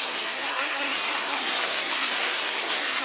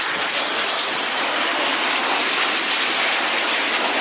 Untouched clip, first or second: second